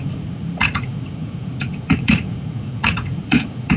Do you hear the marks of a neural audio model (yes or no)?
yes